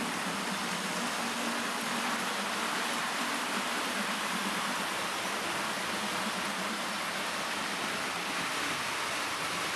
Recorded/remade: recorded